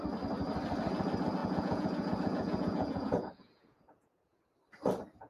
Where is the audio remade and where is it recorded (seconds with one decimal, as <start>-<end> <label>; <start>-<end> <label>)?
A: 0.0-1.4 recorded; 1.4-4.4 remade; 4.4-5.3 recorded